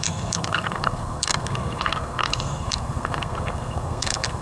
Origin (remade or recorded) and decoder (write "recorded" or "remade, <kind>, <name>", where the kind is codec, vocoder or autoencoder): remade, codec, SNAC